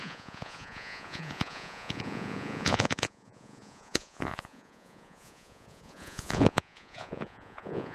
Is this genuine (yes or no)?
no